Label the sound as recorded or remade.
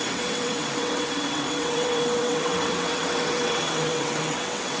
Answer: remade